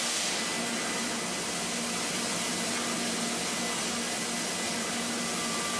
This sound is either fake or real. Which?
real